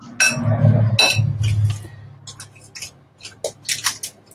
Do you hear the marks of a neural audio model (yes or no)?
no